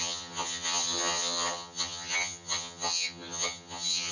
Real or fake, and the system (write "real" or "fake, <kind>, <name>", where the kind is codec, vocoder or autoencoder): fake, vocoder, HiFi-GAN